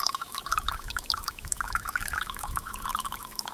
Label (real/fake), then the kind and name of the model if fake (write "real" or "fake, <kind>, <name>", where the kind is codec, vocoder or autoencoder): fake, autoencoder, DAC-VAE